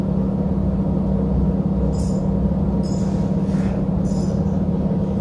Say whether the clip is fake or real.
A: real